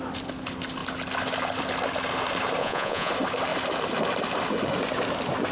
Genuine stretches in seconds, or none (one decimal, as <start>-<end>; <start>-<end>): 0.0-2.6; 3.1-5.5